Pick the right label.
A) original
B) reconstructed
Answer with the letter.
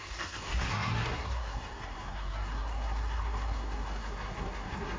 B